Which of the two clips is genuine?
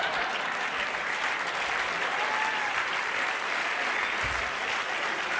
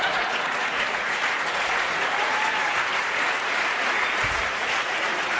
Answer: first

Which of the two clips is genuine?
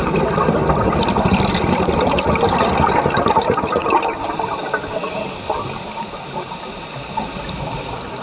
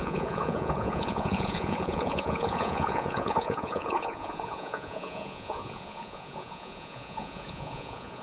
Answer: first